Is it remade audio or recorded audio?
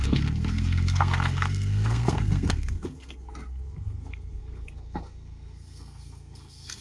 remade